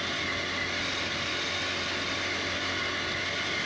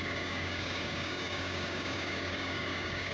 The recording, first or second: first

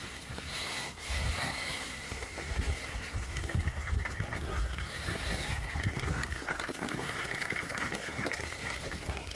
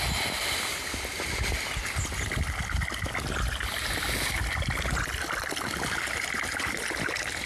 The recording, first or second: second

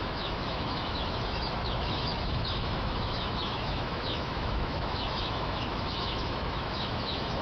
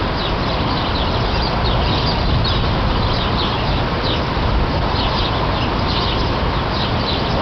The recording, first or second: second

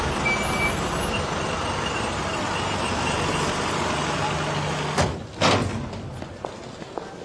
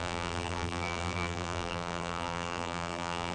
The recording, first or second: first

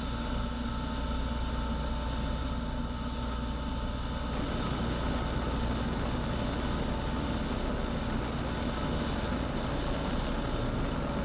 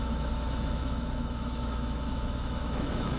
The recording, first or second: first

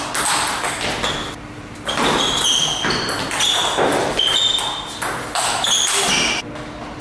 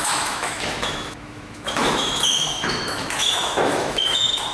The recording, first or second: first